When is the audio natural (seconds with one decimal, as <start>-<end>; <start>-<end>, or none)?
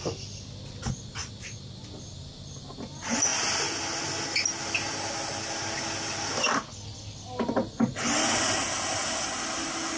0.0-10.0